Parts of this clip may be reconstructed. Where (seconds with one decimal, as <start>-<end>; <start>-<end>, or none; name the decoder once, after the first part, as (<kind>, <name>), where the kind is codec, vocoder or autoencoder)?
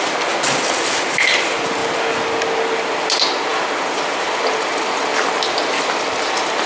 none